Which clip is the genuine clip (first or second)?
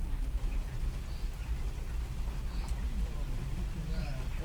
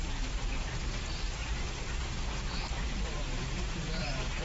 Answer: first